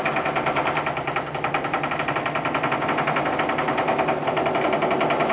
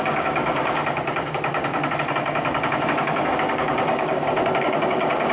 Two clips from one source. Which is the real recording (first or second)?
first